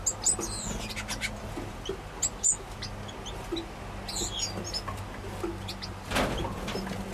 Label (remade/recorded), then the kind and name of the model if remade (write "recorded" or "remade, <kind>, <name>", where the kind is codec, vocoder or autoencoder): recorded